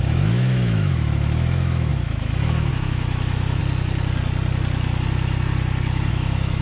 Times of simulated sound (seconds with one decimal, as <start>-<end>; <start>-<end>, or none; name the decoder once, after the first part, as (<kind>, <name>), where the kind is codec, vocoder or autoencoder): 0.0-3.6 (autoencoder, DAC-VAE); 6.1-6.6